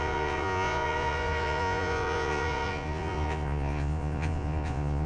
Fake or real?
fake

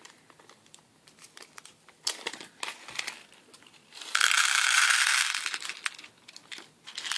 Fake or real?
fake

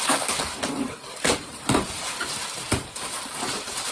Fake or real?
fake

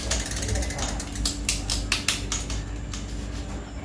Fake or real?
real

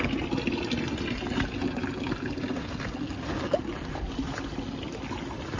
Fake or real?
real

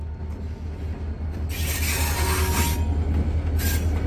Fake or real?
real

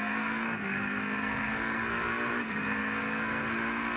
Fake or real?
fake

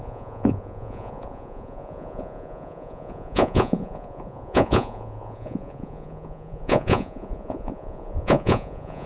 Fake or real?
fake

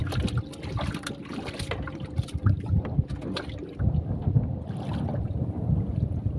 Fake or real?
real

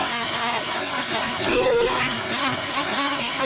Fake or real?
fake